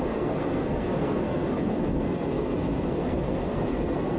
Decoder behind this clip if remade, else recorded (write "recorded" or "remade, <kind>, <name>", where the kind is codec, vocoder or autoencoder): remade, codec, SNAC